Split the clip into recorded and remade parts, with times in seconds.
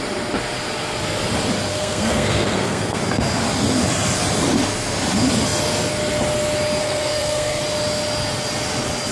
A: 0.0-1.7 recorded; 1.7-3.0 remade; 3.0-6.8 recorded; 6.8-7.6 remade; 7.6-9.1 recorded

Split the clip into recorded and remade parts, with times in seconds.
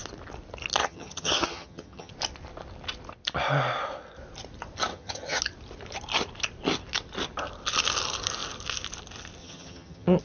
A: 0.0-0.8 recorded; 0.8-2.1 remade; 2.1-4.9 recorded; 4.9-5.4 remade; 5.4-9.4 recorded; 9.4-10.2 remade